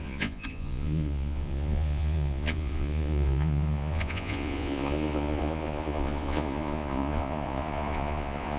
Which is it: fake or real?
fake